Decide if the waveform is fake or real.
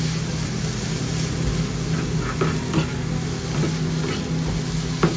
real